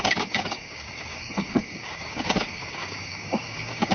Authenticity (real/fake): fake